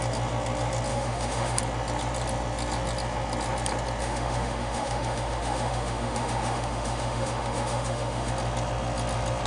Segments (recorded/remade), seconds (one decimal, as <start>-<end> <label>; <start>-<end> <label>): 0.0-0.9 recorded; 0.9-1.6 remade; 1.6-4.0 recorded; 4.0-8.3 remade; 8.3-9.5 recorded